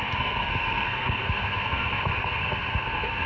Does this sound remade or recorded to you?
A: remade